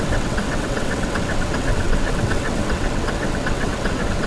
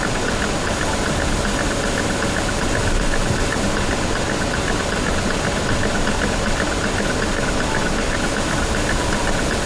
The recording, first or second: second